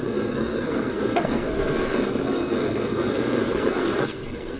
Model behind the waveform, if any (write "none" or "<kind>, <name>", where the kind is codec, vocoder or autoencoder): codec, SNAC